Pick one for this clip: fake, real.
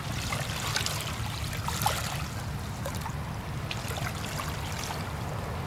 real